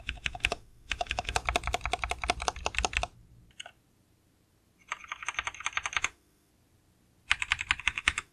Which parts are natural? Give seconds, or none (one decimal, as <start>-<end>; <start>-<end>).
1.4-6.0; 6.5-7.8